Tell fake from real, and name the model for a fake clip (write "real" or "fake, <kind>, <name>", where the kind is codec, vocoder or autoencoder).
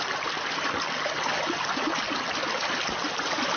real